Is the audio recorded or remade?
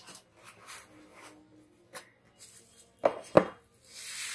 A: recorded